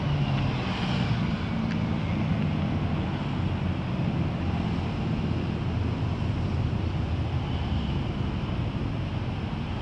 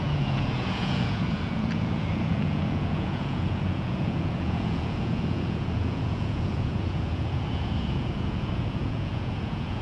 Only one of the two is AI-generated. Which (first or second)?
second